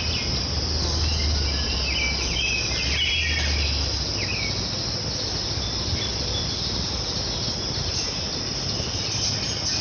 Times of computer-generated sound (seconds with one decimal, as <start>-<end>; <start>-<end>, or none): 4.3-7.9